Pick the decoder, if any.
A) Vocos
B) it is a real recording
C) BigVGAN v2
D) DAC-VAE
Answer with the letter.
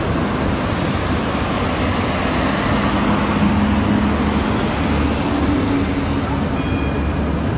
B